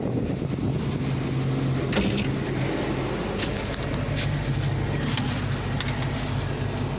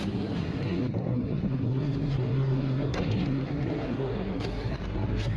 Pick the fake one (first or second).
second